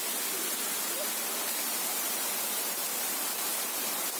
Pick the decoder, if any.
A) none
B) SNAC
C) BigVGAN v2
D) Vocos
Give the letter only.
A